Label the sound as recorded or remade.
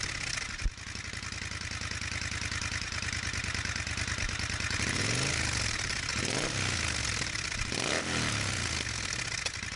recorded